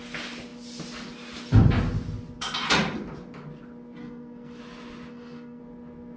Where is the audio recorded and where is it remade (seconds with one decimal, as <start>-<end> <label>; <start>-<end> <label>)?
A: 0.0-4.0 recorded; 4.0-4.6 remade; 4.6-5.1 recorded; 5.1-5.6 remade; 5.6-6.2 recorded